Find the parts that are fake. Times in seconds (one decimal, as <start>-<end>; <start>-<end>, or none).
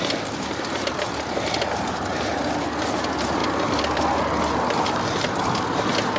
none